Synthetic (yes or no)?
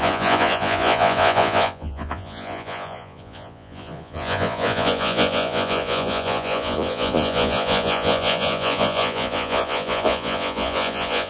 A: yes